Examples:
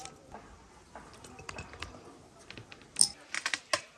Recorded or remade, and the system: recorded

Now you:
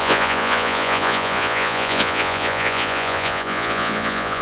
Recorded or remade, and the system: remade, vocoder, Vocos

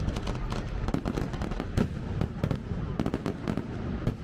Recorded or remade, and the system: recorded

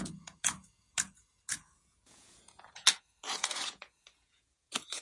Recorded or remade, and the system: remade, vocoder, Vocos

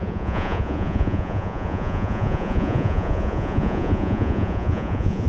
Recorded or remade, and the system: remade, vocoder, Vocos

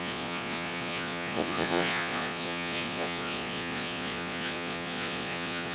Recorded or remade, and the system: remade, vocoder, Vocos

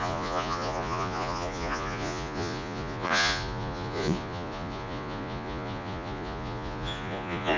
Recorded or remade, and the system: remade, vocoder, Vocos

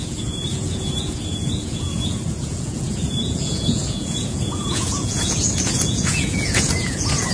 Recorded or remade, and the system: remade, vocoder, Vocos